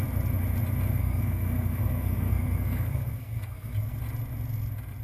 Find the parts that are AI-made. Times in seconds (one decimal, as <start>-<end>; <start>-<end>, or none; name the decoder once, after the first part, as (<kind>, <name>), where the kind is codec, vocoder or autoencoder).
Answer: 1.0-4.0 (codec, SNAC)